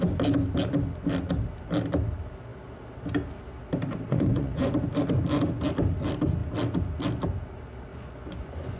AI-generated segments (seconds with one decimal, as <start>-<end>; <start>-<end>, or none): 4.1-4.7; 7.9-8.8